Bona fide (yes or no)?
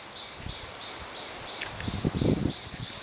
yes